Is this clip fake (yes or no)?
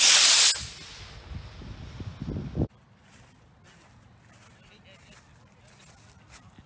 no